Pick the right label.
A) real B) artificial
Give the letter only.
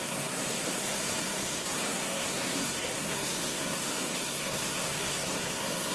B